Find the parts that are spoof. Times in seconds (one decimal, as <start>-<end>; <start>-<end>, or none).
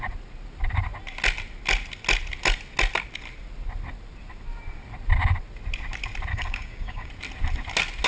6.3-7.1